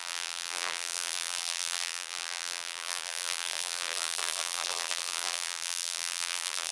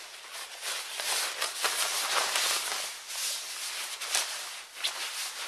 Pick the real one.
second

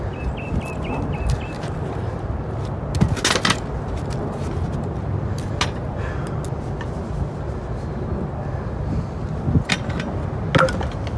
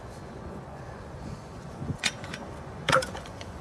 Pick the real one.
first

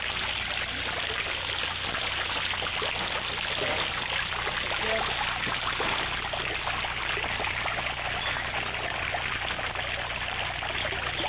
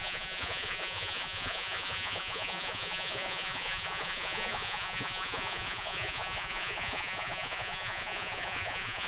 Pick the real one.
first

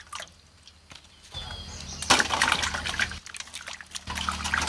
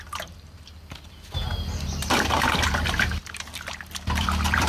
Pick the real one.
first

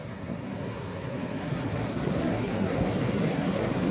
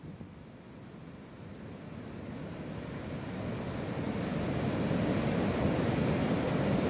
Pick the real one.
second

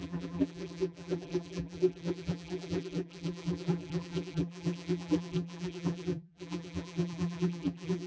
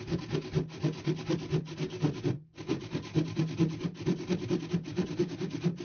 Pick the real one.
second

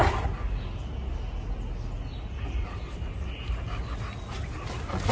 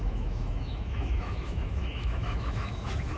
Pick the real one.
first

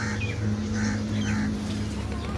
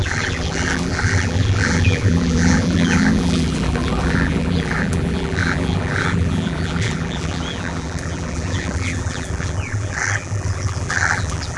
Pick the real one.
first